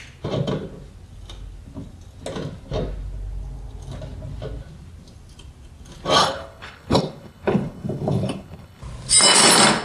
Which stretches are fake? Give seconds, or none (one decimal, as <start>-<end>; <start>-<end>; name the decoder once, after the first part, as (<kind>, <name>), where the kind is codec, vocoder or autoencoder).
6.2-8.8 (codec, HILCodec)